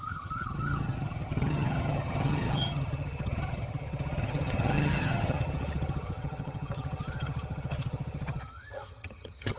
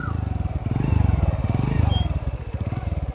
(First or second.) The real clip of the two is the second